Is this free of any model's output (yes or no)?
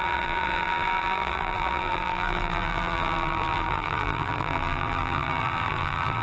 no